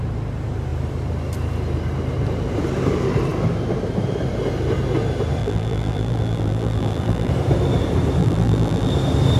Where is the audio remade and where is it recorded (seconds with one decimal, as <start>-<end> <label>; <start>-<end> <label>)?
0.0-5.4 recorded; 5.4-7.3 remade; 7.3-8.2 recorded; 8.2-8.9 remade; 8.9-9.4 recorded